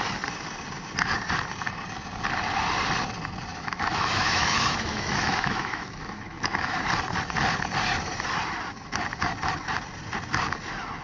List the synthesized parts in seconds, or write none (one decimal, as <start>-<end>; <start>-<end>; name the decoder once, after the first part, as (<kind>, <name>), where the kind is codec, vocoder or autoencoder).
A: 3.5-6.8 (autoencoder, DAC-VAE)